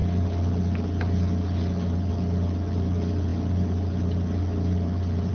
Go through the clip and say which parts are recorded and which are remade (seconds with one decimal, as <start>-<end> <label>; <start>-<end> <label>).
0.0-5.3 recorded